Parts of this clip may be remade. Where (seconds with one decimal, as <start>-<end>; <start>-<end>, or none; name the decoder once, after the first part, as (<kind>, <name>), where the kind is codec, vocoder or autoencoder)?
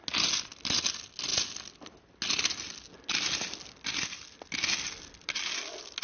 none